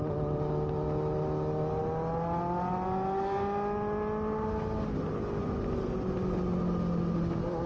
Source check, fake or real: real